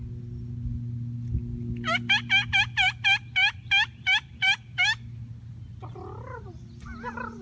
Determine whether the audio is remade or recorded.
recorded